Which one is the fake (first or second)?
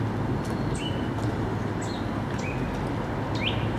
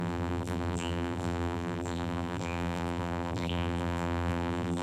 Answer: second